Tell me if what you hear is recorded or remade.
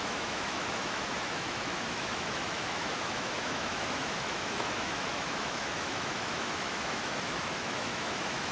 remade